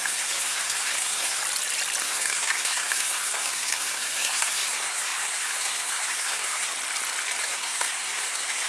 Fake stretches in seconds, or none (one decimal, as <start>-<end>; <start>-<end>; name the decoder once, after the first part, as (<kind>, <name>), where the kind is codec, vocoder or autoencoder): 0.0-1.4 (codec, SNAC); 2.0-6.7; 7.4-8.7